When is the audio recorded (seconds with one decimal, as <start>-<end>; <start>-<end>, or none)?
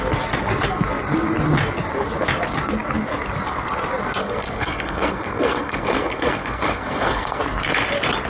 0.0-4.2; 7.4-8.3